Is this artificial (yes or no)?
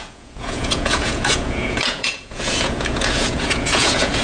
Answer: yes